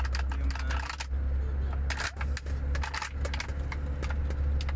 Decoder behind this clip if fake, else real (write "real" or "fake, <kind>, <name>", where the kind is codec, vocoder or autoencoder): real